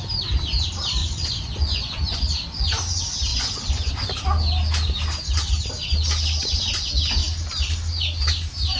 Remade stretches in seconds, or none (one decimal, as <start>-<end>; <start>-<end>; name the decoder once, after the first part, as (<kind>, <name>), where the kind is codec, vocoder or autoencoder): 1.0-2.4 (vocoder, Vocos); 3.3-3.9